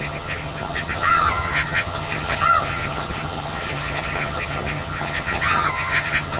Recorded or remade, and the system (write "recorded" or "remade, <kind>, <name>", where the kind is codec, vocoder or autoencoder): remade, vocoder, HiFi-GAN